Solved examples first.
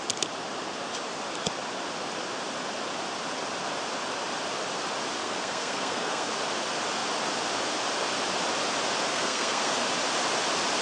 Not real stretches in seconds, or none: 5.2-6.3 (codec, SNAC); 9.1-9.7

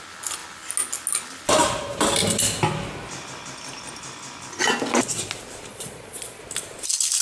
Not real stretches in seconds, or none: 5.7-6.4 (vocoder, Vocos)